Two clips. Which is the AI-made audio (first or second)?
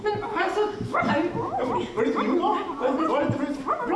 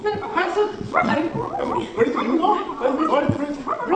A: second